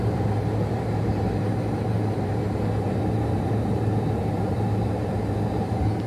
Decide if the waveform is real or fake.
fake